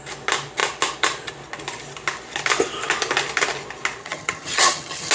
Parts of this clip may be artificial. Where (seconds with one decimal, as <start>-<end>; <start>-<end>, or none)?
4.0-5.1